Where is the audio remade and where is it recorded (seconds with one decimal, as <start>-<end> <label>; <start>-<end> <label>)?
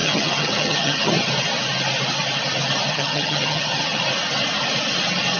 0.0-1.1 remade; 1.1-2.9 recorded; 2.9-4.0 remade; 4.0-5.4 recorded